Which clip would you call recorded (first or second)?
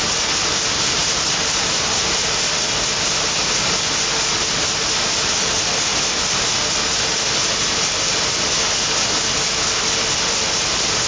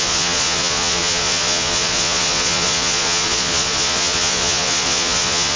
first